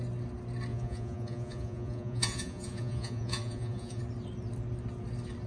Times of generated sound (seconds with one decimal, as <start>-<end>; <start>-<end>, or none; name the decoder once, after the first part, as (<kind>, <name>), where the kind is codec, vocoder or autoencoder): 0.7-4.0 (vocoder, Vocos)